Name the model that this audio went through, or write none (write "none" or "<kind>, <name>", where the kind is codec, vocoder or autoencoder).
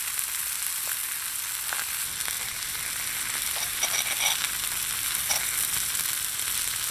none